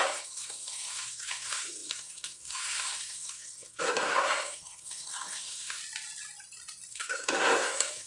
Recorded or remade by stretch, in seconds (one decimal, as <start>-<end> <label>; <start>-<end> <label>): 0.0-5.8 remade; 5.8-6.9 recorded; 6.9-8.1 remade